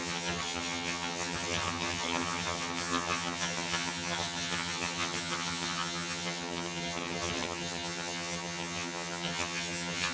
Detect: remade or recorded remade